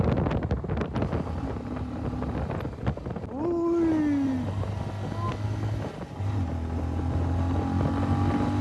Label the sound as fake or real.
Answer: real